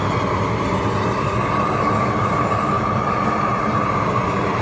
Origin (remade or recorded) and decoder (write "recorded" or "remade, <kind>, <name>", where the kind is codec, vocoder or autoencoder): recorded